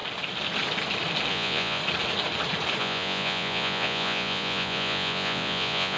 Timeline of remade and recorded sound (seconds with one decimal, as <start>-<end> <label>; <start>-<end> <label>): 0.0-1.3 recorded; 1.3-1.8 remade; 1.8-2.8 recorded; 2.8-6.0 remade